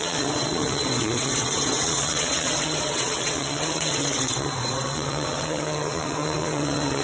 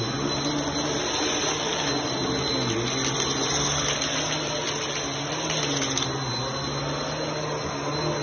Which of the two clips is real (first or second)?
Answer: second